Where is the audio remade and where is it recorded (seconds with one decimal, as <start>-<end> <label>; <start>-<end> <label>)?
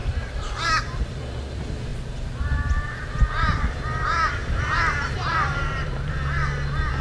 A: 0.0-0.8 remade; 0.8-4.4 recorded; 4.4-6.1 remade; 6.1-7.0 recorded